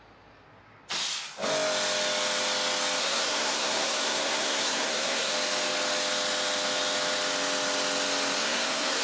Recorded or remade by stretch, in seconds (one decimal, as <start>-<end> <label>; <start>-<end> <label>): 0.0-3.0 recorded; 3.0-5.3 remade; 5.3-8.4 recorded; 8.4-9.0 remade